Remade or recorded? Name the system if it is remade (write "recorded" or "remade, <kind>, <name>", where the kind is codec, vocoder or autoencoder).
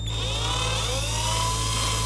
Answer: recorded